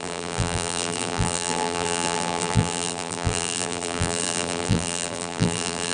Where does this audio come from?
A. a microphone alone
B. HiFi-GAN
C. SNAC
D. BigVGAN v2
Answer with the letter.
D